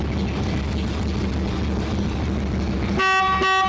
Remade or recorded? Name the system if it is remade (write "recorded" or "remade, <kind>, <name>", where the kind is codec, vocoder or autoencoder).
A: recorded